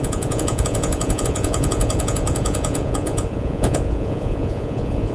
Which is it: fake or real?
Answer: fake